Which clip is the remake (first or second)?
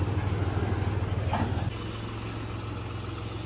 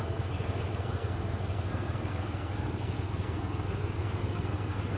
second